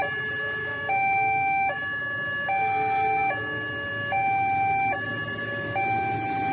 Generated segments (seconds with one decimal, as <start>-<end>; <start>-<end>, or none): 0.6-2.0